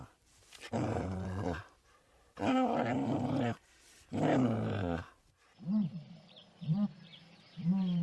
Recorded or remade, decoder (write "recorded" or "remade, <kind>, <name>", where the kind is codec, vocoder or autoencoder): remade, vocoder, BigVGAN v2